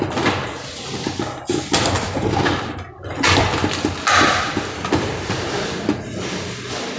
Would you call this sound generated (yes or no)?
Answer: no